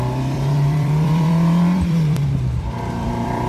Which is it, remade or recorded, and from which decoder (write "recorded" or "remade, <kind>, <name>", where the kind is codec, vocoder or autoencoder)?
remade, vocoder, BigVGAN v2